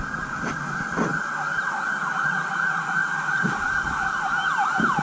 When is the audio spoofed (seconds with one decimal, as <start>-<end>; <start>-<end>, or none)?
1.1-4.1